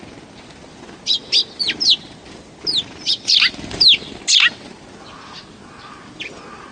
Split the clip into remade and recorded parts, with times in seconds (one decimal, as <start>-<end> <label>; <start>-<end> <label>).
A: 0.0-6.7 recorded